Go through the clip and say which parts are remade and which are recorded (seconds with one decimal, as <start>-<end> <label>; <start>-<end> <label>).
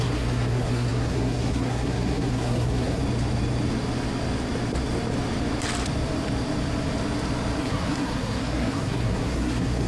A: 0.0-3.0 remade; 3.0-7.6 recorded; 7.6-9.9 remade